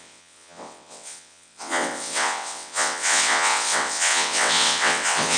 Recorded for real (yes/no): no